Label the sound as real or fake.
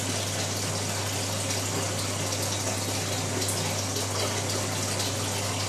real